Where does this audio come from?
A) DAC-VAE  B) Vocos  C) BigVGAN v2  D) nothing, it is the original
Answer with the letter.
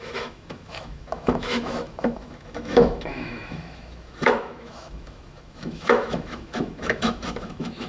A